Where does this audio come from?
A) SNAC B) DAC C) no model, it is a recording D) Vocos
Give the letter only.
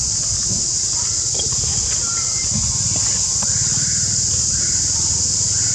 C